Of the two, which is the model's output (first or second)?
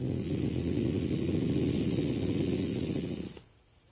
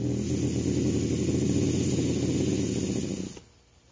first